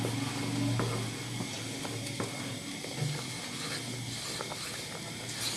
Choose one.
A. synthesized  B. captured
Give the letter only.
B